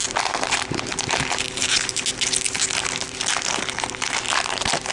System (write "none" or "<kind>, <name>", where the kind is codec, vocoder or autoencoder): none